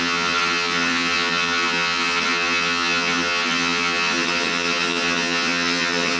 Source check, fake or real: fake